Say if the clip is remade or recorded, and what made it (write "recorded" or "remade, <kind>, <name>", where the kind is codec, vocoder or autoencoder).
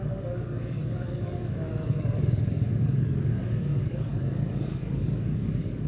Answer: remade, codec, DAC